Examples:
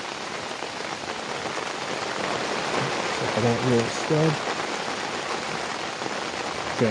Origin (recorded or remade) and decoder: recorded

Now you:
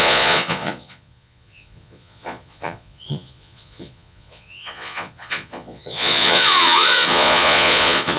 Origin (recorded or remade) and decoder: remade, vocoder, Vocos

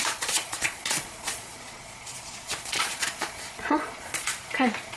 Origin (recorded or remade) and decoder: remade, vocoder, Vocos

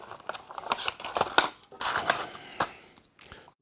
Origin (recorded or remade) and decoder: recorded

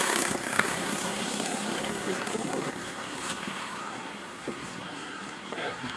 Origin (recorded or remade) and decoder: remade, codec, SNAC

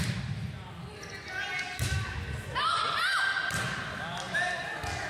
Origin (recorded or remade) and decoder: recorded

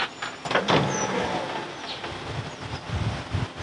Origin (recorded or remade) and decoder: recorded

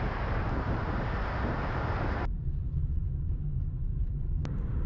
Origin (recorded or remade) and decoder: remade, vocoder, BigVGAN v2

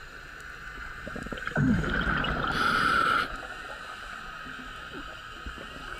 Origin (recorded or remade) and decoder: recorded